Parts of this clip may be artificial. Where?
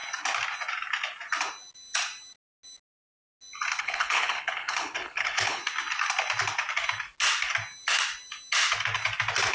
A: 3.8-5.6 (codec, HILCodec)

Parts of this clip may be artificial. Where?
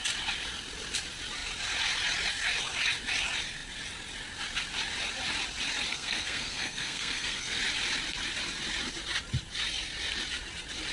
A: 5.9-7.6 (codec, SNAC)